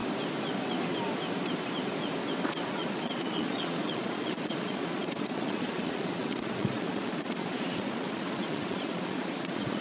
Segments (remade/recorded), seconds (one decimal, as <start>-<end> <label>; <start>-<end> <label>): 0.0-2.7 recorded; 2.7-9.8 remade